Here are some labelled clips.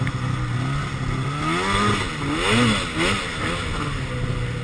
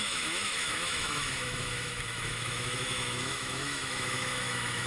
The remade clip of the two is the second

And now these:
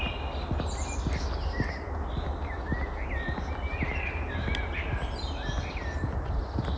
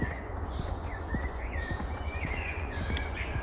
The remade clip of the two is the second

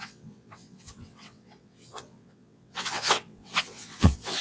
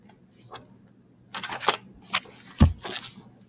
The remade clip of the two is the first